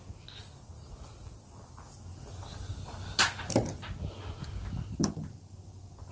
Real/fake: real